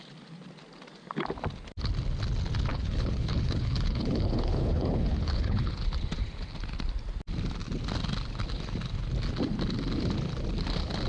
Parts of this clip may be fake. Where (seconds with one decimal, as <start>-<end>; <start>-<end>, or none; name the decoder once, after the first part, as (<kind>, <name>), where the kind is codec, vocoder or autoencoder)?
2.7-5.8 (codec, HILCodec)